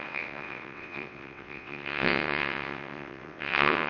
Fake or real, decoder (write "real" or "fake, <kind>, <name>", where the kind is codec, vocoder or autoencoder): fake, vocoder, WaveNeXt